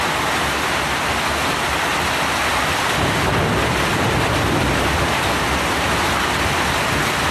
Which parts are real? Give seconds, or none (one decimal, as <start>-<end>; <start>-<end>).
0.0-1.4; 5.8-7.3